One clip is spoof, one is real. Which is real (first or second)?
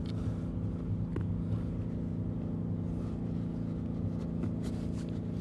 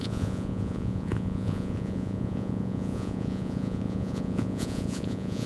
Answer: first